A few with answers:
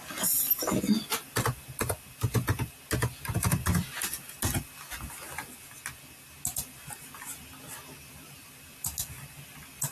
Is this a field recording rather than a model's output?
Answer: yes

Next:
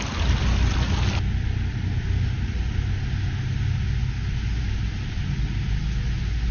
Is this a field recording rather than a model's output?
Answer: yes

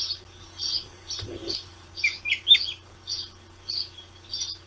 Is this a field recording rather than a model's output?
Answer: yes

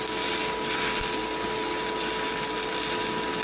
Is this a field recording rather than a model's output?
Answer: yes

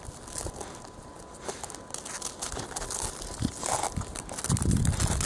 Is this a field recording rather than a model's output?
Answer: yes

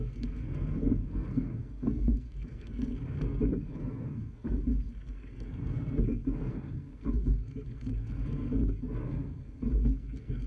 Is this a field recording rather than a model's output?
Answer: no